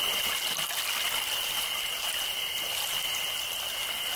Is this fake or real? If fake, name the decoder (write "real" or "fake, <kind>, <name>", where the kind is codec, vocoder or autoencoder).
real